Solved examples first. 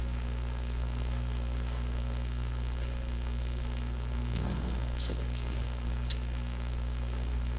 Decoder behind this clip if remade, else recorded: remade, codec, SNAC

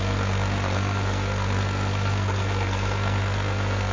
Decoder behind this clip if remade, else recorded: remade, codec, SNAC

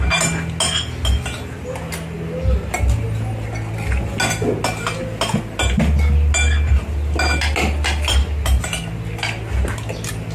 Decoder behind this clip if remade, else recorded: recorded